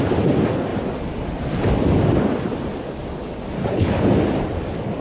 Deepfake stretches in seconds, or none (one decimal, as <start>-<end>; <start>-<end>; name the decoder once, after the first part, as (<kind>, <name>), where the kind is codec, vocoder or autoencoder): 3.6-4.1 (codec, HILCodec)